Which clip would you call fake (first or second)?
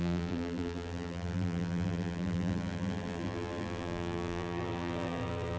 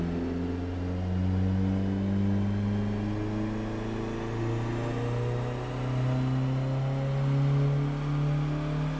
first